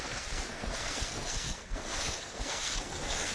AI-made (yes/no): yes